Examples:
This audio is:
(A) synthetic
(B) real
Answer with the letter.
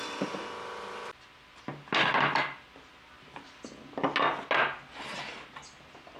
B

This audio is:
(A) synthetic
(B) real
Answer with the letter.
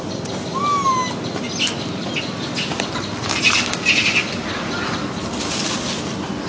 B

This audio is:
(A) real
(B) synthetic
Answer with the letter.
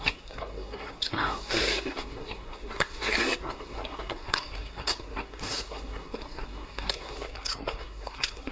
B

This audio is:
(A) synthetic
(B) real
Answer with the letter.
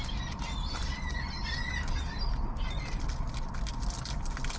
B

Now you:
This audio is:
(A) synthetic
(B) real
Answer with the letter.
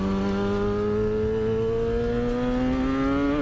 B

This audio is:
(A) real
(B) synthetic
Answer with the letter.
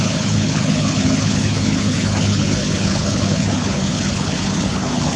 B